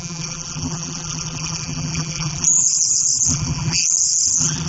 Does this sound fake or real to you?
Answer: fake